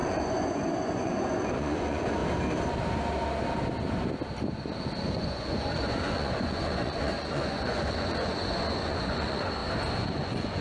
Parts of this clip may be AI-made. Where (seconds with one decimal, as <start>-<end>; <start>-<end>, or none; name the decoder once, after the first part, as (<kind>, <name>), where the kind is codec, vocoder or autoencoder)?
0.0-2.2 (vocoder, Vocos); 5.0-9.6; 10.1-10.6